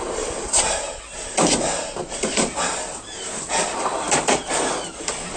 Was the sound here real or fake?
real